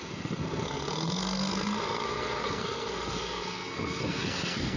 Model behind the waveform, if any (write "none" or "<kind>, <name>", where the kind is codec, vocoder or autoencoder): codec, SNAC